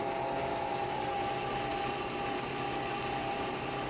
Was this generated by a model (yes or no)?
no